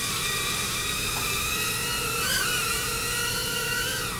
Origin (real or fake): fake